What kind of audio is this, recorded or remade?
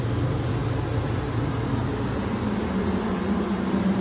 recorded